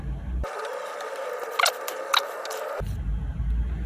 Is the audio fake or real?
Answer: real